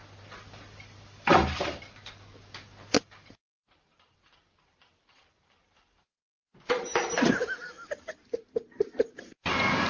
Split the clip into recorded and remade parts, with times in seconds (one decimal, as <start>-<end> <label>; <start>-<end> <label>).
0.0-6.2 remade; 6.2-9.2 recorded; 9.2-9.9 remade